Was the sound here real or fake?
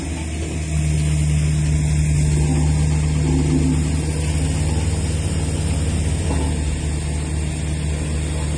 real